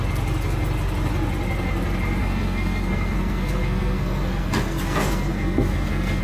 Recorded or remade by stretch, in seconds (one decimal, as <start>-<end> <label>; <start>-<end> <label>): 0.0-2.2 recorded; 2.2-6.2 remade